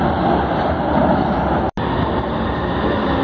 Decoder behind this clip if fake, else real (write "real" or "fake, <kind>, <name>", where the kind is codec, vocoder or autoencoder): real